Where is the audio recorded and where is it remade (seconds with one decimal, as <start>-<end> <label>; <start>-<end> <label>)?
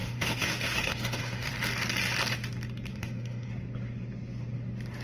0.0-1.5 remade; 1.5-2.9 recorded; 2.9-3.5 remade; 3.5-5.0 recorded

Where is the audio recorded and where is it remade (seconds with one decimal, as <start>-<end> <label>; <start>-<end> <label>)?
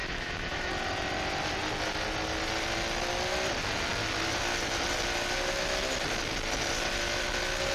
0.0-0.7 remade; 0.7-7.7 recorded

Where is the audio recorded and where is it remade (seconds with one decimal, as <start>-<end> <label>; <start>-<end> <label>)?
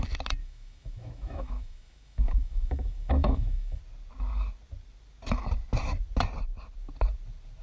0.0-0.4 recorded; 0.4-3.8 remade; 3.8-7.6 recorded